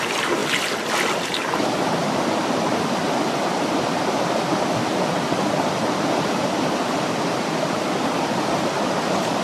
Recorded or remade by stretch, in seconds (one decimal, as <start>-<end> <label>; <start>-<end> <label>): 0.0-0.4 remade; 0.4-1.7 recorded; 1.7-9.4 remade

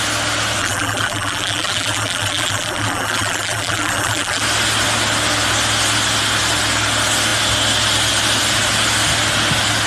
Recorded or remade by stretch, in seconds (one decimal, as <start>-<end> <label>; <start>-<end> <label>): 0.0-0.6 recorded; 0.6-4.4 remade; 4.4-9.9 recorded

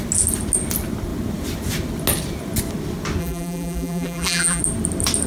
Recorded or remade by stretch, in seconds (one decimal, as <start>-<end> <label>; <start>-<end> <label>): 0.0-3.2 recorded; 3.2-4.6 remade; 4.6-5.3 recorded

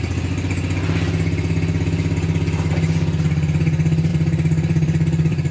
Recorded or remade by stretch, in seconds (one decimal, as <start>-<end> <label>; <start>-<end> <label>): 0.0-4.1 recorded; 4.1-5.5 remade

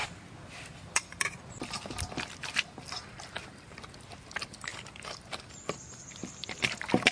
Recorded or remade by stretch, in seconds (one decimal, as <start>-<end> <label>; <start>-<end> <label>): 0.0-3.3 remade; 3.3-4.7 recorded; 4.7-6.0 remade; 6.0-7.1 recorded

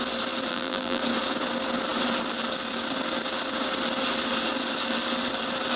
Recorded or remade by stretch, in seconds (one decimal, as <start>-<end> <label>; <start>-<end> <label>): 0.0-0.5 recorded; 0.5-1.0 remade; 1.0-5.8 recorded

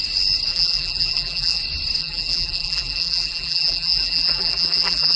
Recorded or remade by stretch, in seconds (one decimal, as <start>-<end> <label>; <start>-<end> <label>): 0.0-0.5 recorded; 0.5-1.6 remade; 1.6-2.0 recorded; 2.0-5.2 remade